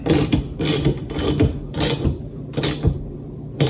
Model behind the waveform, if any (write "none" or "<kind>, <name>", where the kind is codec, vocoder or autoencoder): none